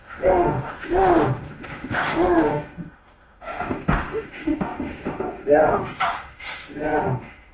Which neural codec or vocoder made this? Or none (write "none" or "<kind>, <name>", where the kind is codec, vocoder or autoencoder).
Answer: autoencoder, DAC-VAE